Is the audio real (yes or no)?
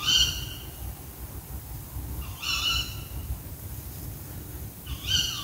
yes